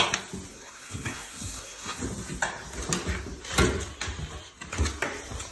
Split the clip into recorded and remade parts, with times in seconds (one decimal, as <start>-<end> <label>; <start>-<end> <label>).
0.0-0.5 recorded; 0.5-2.0 remade; 2.0-5.5 recorded